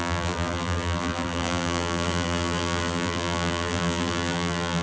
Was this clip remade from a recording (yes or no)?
yes